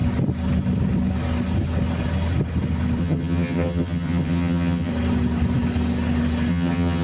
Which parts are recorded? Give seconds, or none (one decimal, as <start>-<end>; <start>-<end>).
0.0-3.0; 4.9-6.5